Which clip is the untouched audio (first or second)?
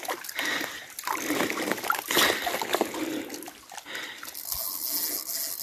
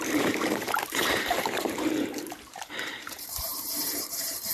first